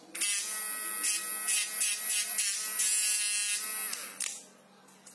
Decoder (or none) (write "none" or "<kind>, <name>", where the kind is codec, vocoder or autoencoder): none